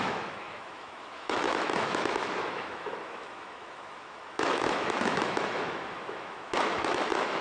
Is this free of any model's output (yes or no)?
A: no